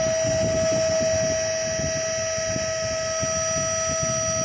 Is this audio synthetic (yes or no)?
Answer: no